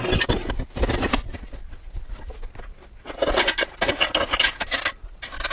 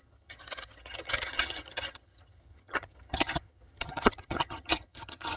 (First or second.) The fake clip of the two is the second